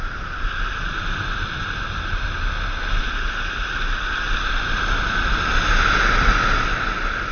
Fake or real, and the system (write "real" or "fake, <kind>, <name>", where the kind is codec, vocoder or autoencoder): real